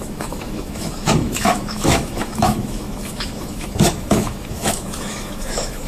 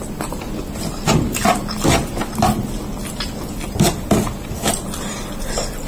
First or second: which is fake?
first